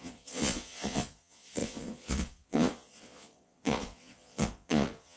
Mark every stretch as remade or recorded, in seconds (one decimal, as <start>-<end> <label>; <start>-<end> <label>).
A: 0.0-5.2 remade